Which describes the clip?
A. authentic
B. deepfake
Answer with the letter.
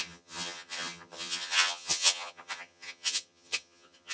B